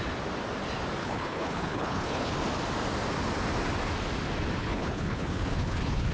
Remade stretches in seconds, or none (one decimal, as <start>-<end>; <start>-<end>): 1.0-2.3; 4.6-6.1